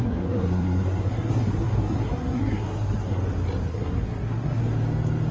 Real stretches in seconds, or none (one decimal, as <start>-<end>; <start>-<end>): 3.2-3.7; 4.6-5.3